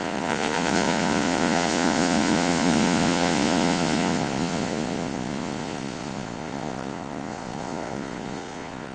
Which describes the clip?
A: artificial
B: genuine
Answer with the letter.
A